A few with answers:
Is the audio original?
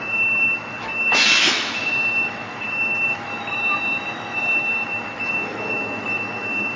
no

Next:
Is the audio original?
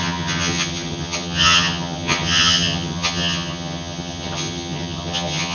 no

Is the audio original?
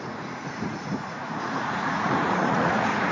no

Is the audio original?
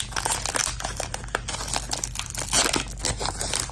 yes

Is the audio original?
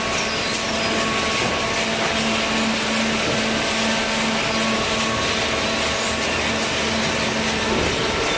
yes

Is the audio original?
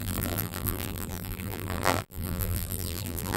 no